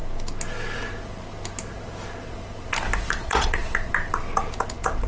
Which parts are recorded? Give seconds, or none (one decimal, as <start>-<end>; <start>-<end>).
0.0-3.1; 3.6-5.1

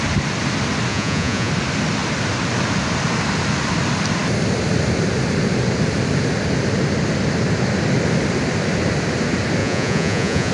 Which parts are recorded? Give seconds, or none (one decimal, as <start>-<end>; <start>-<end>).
0.0-0.9; 1.5-9.6